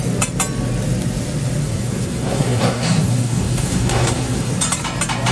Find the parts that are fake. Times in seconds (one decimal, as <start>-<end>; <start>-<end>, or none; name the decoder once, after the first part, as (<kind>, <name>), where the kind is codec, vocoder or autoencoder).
1.6-4.5 (codec, SNAC)